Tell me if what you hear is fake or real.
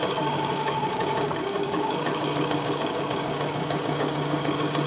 fake